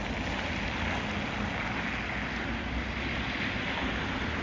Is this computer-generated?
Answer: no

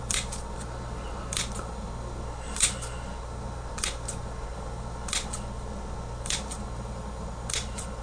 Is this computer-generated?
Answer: no